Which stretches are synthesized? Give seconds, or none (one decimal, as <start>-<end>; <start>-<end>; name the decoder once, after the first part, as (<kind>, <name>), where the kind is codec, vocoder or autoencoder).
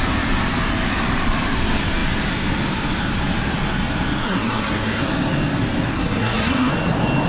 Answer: 4.2-5.0 (codec, SNAC); 5.9-6.7